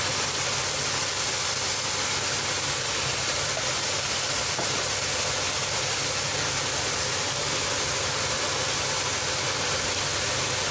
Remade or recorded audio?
recorded